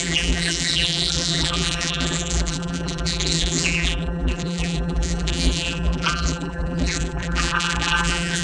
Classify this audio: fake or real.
fake